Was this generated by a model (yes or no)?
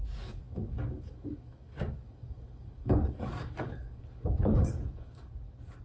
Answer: yes